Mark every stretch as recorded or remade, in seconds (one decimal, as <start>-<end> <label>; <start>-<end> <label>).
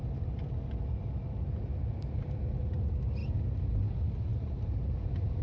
0.0-4.3 recorded; 4.3-5.4 remade